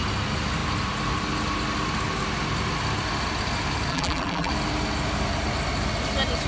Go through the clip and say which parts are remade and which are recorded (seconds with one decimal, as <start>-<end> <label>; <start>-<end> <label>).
0.0-3.9 recorded; 3.9-4.5 remade; 4.5-6.5 recorded